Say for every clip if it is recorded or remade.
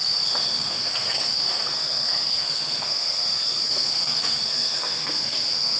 remade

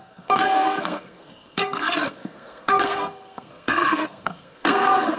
remade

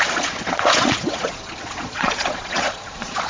remade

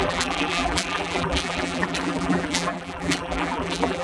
remade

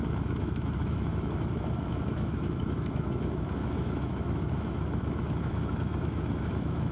remade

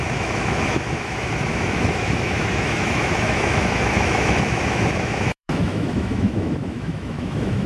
remade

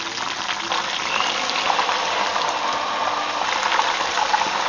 recorded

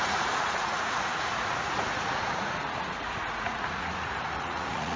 remade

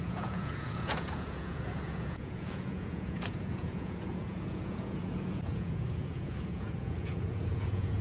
remade